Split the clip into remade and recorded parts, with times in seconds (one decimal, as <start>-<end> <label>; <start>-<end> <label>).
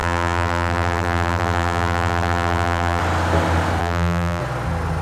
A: 0.0-3.0 remade; 3.0-3.8 recorded; 3.8-4.4 remade; 4.4-5.0 recorded